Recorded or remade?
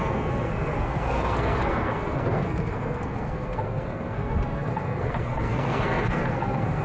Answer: remade